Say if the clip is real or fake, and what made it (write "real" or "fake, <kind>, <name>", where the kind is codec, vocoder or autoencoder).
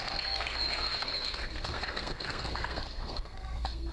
fake, codec, SNAC